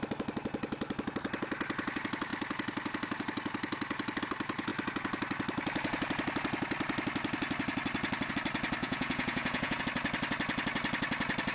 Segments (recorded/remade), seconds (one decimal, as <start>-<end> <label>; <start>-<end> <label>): 0.0-8.8 recorded; 8.8-9.8 remade; 9.8-11.5 recorded